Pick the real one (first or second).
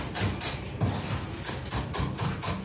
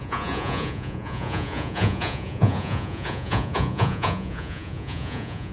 first